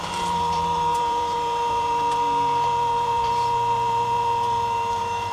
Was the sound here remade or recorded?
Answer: remade